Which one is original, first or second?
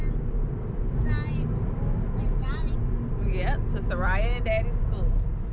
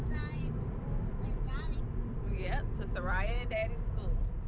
first